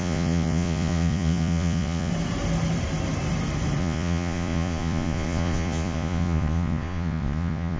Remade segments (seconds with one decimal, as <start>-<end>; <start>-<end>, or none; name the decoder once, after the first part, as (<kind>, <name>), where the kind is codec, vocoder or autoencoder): 0.0-2.1 (vocoder, Vocos); 3.8-7.8